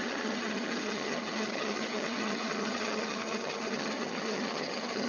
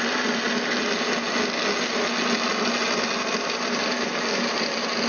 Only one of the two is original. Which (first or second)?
second